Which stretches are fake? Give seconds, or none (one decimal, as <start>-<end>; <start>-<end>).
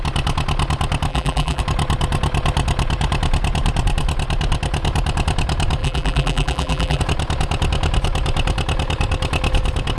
1.1-1.6; 5.8-7.0